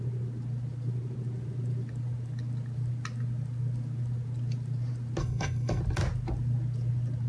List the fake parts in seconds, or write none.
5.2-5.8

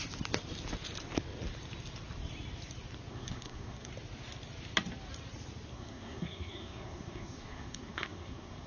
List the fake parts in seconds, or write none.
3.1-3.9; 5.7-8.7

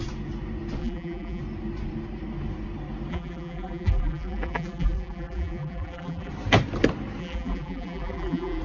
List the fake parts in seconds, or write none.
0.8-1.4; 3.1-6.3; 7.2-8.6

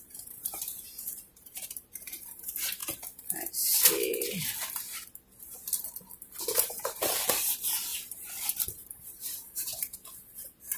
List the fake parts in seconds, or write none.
0.0-2.8; 6.4-7.9; 8.7-9.7; 10.4-10.8

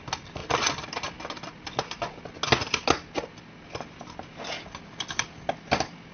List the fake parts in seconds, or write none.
none

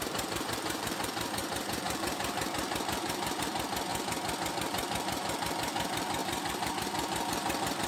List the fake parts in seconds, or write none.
0.0-3.9; 4.5-7.9

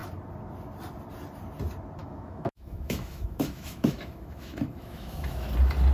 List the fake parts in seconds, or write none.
2.0-5.5

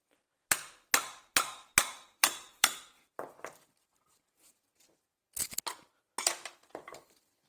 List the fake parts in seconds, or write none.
2.2-3.9